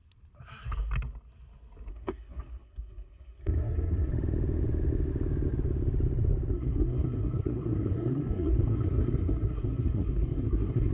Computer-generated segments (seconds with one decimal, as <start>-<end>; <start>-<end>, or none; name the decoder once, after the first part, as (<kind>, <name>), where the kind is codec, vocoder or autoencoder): 1.9-4.1 (codec, SNAC); 6.5-10.9